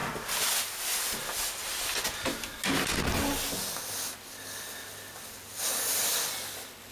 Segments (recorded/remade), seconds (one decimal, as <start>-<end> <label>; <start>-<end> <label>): 0.0-6.9 recorded

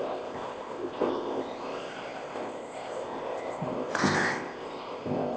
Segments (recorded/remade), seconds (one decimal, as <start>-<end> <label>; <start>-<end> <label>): 0.0-5.4 remade